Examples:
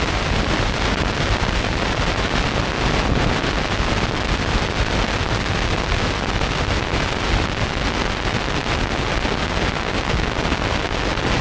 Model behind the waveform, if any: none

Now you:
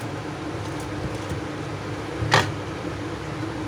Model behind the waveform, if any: none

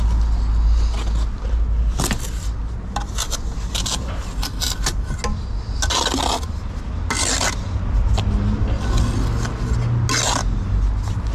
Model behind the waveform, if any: none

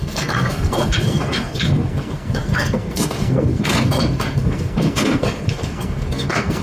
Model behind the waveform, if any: codec, SNAC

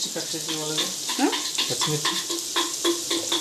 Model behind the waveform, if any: none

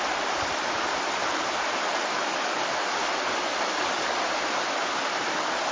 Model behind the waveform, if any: none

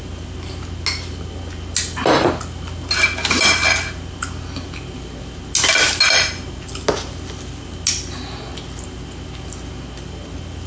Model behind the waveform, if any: none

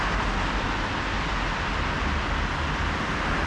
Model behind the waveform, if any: none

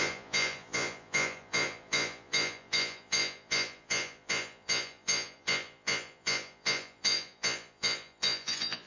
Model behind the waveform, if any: vocoder, Vocos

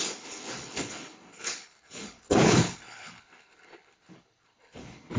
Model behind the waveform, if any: codec, HILCodec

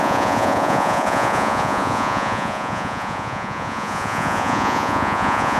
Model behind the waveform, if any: vocoder, Vocos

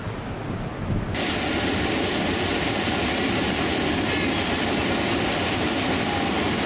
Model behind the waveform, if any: none